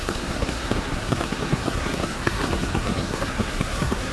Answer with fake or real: fake